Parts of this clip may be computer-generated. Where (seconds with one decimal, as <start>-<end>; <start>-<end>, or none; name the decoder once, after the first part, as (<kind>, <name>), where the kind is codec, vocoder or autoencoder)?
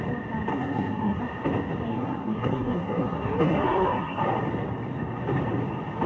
0.5-1.2 (codec, SNAC); 1.9-4.2